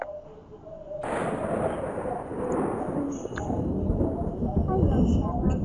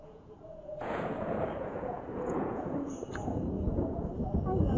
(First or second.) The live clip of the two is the first